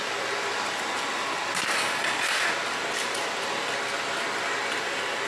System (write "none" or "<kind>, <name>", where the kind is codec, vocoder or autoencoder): none